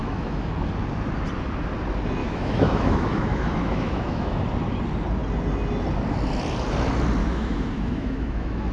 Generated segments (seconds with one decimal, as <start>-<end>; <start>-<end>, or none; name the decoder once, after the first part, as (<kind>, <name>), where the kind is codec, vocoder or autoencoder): 0.0-0.5 (autoencoder, DAC-VAE); 2.2-4.4; 7.2-8.7